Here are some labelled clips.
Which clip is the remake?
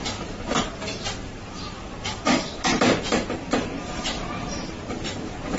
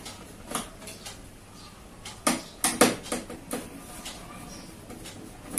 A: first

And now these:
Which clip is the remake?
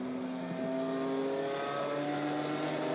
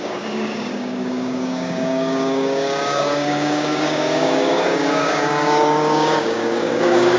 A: second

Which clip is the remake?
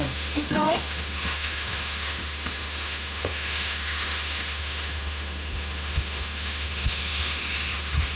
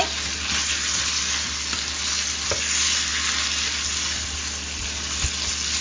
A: first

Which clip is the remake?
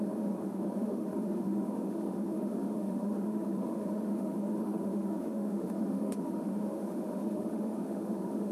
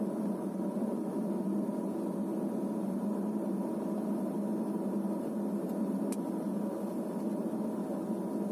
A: first